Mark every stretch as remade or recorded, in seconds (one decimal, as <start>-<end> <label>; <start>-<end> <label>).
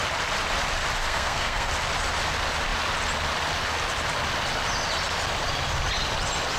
0.0-1.0 recorded; 1.0-1.7 remade; 1.7-6.6 recorded